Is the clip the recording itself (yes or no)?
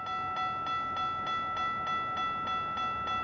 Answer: yes